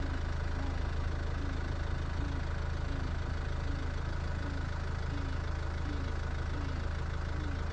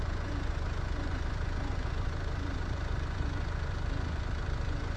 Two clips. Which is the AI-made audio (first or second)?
second